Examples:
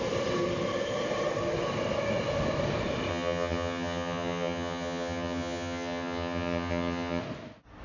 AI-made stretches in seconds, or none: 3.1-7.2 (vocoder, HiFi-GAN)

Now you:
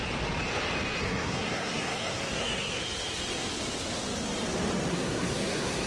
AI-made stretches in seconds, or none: 1.0-2.8 (codec, SNAC); 4.9-5.9

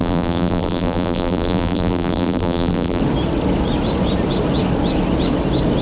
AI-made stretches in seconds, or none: 0.0-3.0 (vocoder, BigVGAN v2)

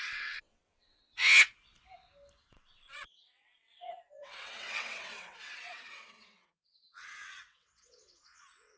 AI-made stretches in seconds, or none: 0.0-1.0 (vocoder, WaveNeXt); 2.5-8.8

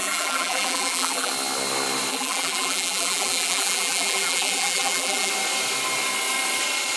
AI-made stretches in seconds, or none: 0.0-1.3 (vocoder, BigVGAN v2); 2.1-5.3

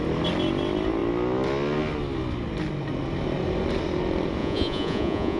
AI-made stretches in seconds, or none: 4.4-5.4 (vocoder, Vocos)

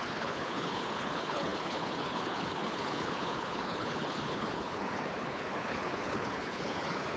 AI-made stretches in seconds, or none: 0.0-7.2 (codec, HILCodec)